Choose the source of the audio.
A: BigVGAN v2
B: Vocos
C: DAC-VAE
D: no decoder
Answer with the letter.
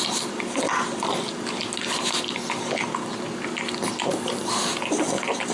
D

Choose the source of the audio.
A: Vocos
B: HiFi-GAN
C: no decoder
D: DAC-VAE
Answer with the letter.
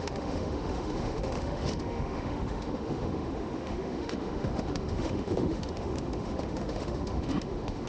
D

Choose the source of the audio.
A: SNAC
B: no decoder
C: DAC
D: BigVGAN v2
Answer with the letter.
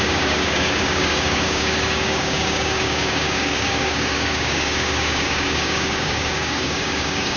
C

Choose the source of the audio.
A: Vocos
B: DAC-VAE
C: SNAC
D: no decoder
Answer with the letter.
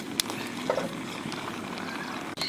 D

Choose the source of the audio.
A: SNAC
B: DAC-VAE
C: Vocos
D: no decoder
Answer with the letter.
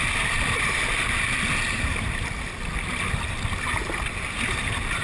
D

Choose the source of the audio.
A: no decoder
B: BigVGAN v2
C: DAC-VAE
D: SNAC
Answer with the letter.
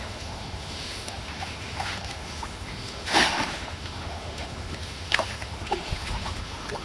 C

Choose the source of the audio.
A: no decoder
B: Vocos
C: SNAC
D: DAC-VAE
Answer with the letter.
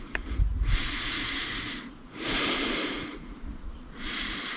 B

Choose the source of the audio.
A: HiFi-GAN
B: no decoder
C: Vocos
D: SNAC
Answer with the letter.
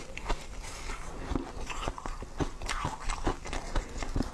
B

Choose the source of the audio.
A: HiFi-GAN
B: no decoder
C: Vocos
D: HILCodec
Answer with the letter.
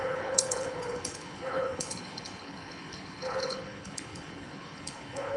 D